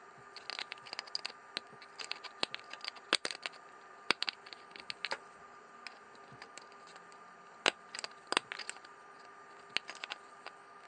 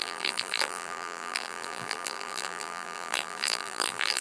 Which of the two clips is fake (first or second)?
second